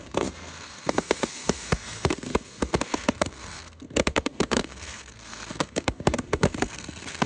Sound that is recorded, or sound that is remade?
remade